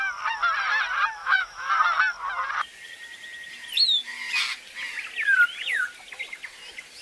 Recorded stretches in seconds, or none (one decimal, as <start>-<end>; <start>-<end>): 0.0-1.2; 1.7-7.0